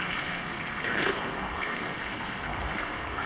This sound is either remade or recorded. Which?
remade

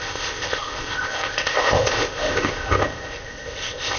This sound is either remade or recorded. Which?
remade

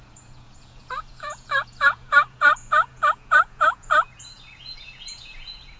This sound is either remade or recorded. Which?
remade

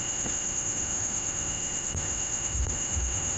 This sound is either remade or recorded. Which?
remade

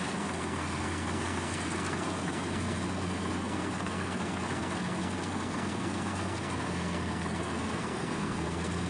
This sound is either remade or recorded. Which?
remade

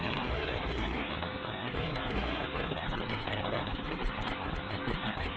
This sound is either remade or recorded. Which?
remade